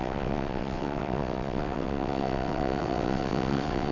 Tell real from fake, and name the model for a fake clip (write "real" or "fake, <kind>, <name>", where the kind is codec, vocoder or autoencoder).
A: fake, vocoder, WaveNeXt